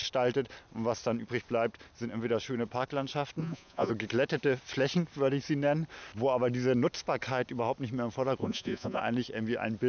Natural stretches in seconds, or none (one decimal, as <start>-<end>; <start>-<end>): 0.0-3.4; 3.9-8.4; 9.0-9.9